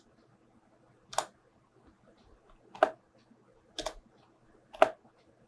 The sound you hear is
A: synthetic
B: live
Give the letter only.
B